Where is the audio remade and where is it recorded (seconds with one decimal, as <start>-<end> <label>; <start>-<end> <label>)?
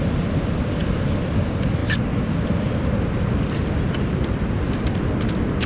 0.0-5.7 recorded